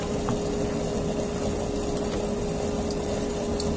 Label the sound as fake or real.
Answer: real